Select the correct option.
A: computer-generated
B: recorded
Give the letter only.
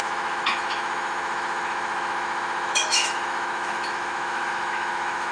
A